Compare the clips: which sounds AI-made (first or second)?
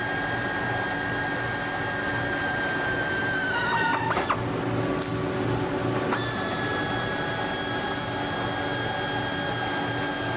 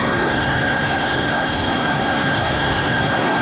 second